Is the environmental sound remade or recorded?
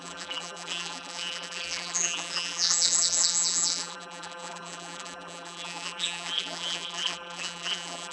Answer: remade